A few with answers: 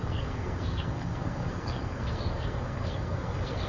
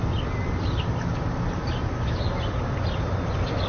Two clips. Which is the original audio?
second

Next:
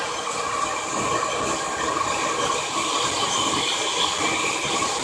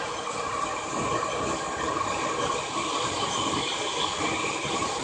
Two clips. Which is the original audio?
first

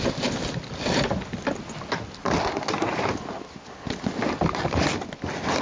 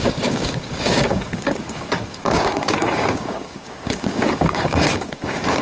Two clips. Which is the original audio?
first